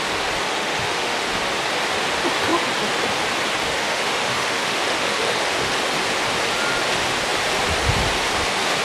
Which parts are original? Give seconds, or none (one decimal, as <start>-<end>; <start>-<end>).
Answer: 0.0-0.5; 1.3-3.6; 5.7-8.8